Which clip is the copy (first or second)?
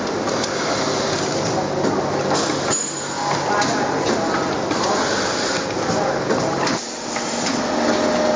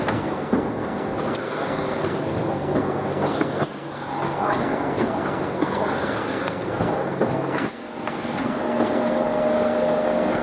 second